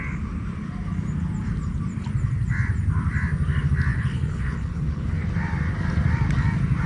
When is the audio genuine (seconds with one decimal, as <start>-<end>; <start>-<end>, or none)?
0.0-3.9; 5.2-6.9